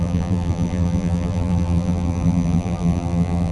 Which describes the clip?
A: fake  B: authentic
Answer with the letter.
A